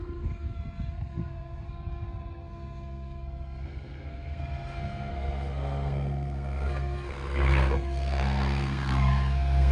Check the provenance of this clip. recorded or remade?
remade